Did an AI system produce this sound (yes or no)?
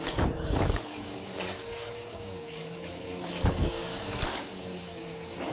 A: yes